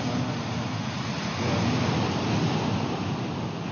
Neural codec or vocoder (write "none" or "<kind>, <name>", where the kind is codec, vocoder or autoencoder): none